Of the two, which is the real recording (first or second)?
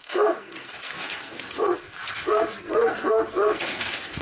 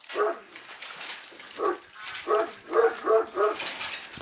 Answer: second